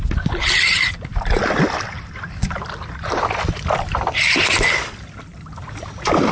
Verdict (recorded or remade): recorded